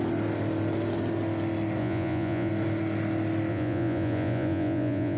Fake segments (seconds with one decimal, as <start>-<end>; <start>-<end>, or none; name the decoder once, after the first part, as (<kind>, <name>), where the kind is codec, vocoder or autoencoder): 1.8-2.5 (vocoder, Vocos); 3.5-5.2